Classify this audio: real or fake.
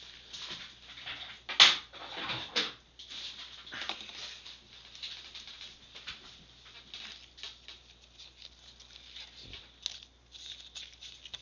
real